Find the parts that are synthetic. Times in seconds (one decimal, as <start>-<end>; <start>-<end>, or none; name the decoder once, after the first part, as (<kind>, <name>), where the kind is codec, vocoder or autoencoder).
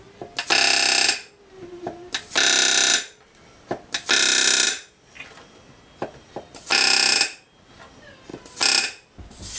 none